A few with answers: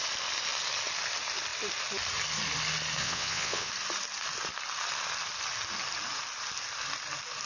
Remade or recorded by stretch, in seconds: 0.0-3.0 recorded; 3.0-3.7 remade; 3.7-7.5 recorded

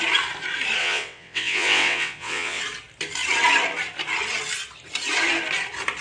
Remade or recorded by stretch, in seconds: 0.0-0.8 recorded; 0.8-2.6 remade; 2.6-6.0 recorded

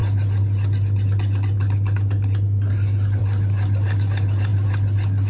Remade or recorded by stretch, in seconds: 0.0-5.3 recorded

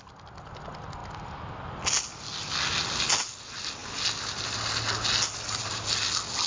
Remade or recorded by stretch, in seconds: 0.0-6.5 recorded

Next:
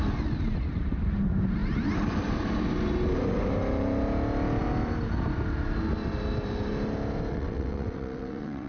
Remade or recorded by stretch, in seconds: 0.0-7.3 recorded; 7.3-8.7 remade